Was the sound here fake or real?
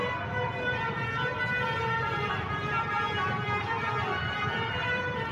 fake